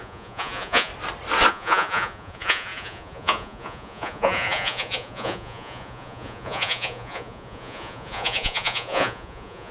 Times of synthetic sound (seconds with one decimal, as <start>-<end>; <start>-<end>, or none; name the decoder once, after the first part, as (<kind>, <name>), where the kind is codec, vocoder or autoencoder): 0.0-0.9 (vocoder, Vocos); 1.5-9.7